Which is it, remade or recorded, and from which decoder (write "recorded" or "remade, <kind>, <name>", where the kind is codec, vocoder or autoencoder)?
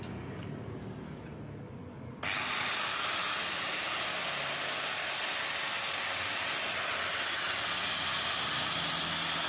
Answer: recorded